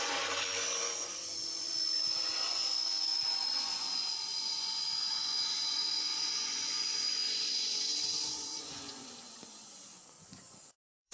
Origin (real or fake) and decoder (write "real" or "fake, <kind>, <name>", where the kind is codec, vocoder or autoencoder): fake, vocoder, Vocos